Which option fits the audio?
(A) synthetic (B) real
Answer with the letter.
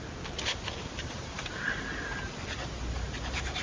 A